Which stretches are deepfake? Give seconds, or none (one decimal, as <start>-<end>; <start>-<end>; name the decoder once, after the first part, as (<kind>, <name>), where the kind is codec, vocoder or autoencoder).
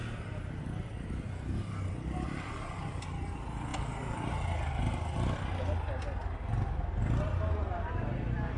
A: none